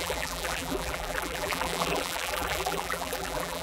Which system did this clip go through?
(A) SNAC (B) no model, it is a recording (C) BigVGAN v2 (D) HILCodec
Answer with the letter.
C